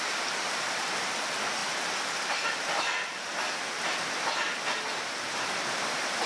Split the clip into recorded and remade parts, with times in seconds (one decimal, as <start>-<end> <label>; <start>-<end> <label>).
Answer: 0.0-3.3 remade; 3.3-4.9 recorded; 4.9-6.3 remade